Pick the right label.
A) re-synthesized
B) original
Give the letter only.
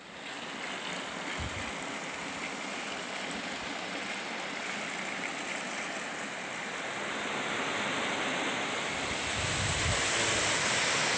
B